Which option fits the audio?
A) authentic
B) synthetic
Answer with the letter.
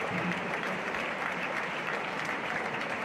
B